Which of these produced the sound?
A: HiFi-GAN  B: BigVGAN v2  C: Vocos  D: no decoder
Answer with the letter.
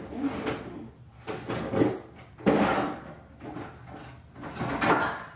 D